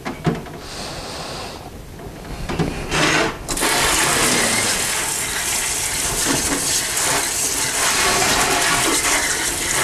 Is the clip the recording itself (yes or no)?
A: yes